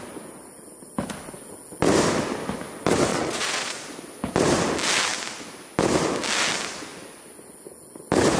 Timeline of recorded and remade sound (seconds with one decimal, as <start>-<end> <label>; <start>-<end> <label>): 0.0-3.1 recorded; 3.1-3.8 remade; 3.8-8.4 recorded